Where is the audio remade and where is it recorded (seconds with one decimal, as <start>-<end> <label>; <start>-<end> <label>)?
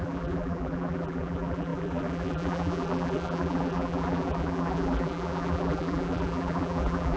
0.0-7.2 remade